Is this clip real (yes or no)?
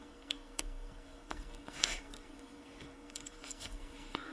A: no